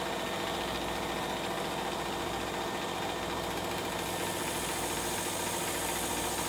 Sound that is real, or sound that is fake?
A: real